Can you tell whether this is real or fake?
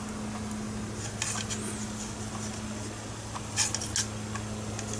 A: real